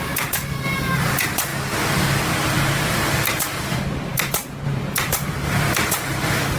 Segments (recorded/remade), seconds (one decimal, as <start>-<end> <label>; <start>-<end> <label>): 0.0-1.5 remade; 1.5-2.9 recorded; 2.9-6.6 remade